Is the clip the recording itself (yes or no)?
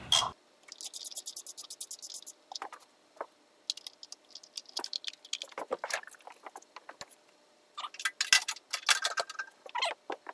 yes